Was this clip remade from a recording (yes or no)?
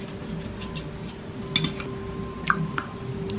no